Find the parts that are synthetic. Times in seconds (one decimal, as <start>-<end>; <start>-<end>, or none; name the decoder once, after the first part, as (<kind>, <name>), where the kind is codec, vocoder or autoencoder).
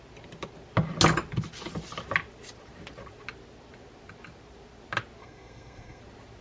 5.2-6.0 (codec, SNAC)